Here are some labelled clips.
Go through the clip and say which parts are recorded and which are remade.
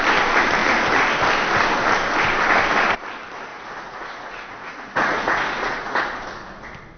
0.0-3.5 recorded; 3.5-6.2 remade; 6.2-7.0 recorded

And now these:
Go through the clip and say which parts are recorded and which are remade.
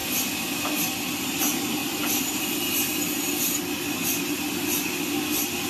0.0-5.7 recorded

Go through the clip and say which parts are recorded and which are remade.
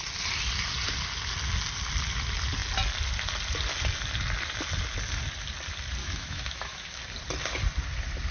0.0-6.0 recorded; 6.0-7.0 remade; 7.0-8.3 recorded